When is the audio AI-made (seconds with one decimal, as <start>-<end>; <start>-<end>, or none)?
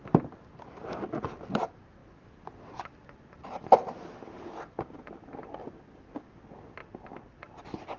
6.8-7.4